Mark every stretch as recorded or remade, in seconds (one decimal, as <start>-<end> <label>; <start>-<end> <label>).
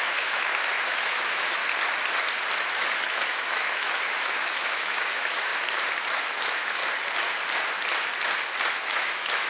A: 0.0-1.6 remade; 1.6-2.7 recorded; 2.7-5.5 remade; 5.5-6.2 recorded; 6.2-6.8 remade; 6.8-8.7 recorded; 8.7-9.5 remade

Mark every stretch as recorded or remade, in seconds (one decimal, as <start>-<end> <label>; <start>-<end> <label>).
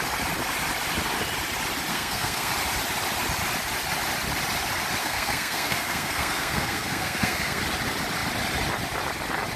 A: 0.0-1.9 recorded; 1.9-2.5 remade; 2.5-5.0 recorded; 5.0-7.6 remade; 7.6-9.6 recorded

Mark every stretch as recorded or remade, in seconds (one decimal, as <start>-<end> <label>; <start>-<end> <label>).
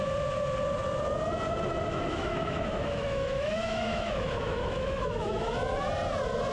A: 0.0-1.9 recorded; 1.9-5.5 remade; 5.5-6.5 recorded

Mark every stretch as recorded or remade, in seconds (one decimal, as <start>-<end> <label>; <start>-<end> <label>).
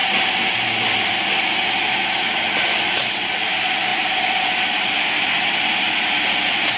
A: 0.0-6.8 recorded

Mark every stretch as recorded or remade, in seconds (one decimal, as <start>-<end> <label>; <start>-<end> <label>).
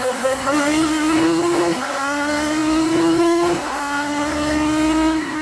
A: 0.0-5.4 remade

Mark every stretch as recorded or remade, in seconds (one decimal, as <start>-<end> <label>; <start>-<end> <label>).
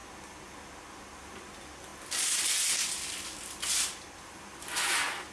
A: 0.0-5.3 recorded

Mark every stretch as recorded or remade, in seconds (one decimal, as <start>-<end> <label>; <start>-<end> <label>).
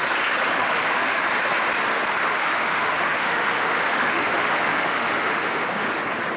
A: 0.0-0.5 recorded; 0.5-1.2 remade; 1.2-2.2 recorded; 2.2-6.0 remade; 6.0-6.4 recorded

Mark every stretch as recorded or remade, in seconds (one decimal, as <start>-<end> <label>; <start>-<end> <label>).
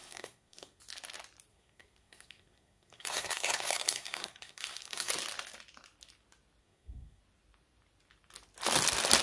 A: 0.0-0.8 remade; 0.8-1.5 recorded; 1.5-5.1 remade; 5.1-6.6 recorded; 6.6-7.2 remade; 7.2-9.2 recorded